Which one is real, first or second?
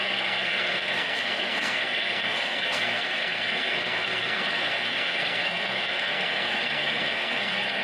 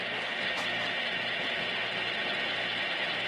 second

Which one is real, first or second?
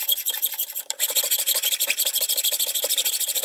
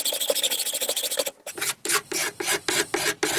second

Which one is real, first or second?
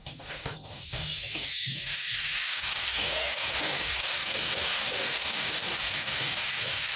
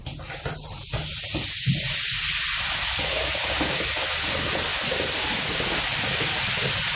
second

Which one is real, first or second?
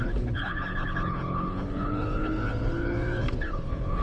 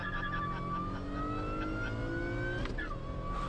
second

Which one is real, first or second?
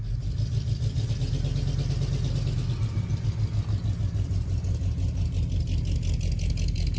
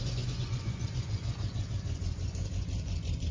first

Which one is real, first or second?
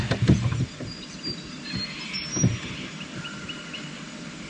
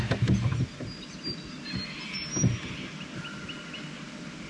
second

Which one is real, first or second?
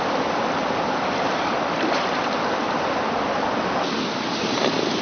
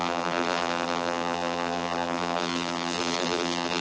first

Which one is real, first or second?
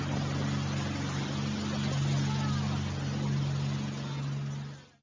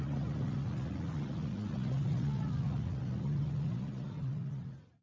first